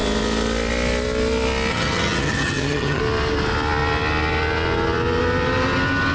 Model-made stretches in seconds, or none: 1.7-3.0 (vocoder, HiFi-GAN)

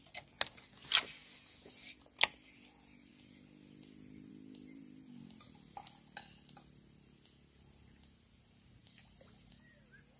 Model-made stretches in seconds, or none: none

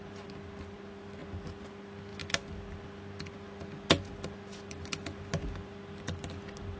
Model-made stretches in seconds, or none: none